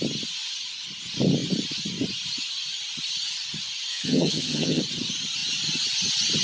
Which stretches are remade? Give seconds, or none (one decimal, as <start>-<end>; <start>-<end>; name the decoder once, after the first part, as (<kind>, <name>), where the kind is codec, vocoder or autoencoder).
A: 3.9-4.8 (vocoder, HiFi-GAN)